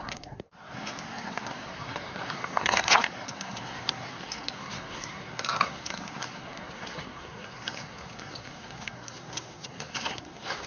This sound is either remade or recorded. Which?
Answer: remade